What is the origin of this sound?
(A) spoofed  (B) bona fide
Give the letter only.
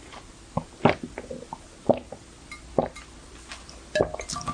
B